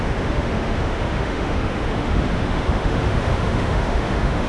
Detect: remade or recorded remade